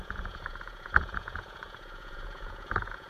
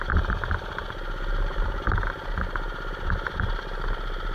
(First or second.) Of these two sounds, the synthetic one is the first